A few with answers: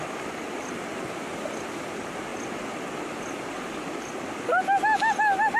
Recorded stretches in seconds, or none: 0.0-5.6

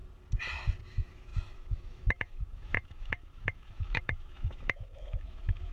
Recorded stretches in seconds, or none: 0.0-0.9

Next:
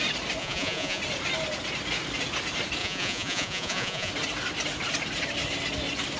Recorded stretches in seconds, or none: 0.0-0.4; 1.0-2.8; 4.1-6.2

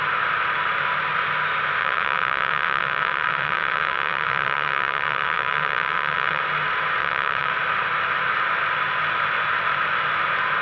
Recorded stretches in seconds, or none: 0.0-1.8; 6.4-7.0; 7.5-10.6

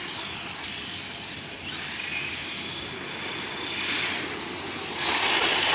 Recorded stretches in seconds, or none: 0.0-5.7